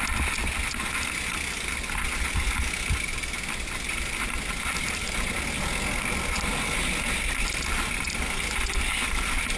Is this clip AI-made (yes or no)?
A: no